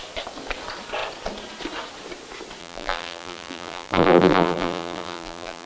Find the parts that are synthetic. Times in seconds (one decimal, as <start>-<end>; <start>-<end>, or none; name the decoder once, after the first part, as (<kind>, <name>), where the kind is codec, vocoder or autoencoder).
2.6-5.7 (vocoder, BigVGAN v2)